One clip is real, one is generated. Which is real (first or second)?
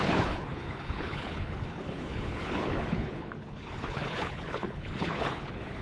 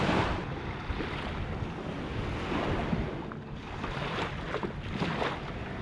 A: second